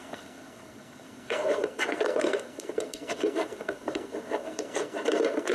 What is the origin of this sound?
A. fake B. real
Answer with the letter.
A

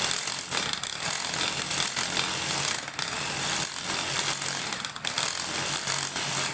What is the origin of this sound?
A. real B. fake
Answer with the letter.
A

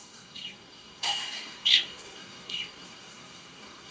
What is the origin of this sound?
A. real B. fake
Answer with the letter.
B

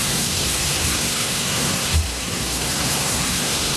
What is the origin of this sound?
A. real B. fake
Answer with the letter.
B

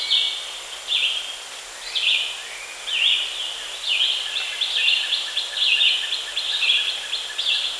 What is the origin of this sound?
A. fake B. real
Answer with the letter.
B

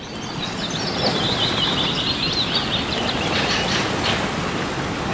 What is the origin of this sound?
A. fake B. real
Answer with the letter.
B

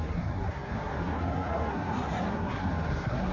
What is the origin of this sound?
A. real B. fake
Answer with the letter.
B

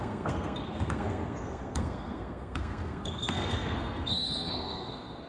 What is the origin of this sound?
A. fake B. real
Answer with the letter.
A